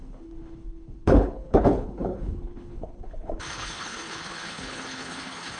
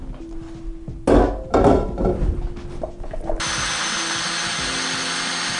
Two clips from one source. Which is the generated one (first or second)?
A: first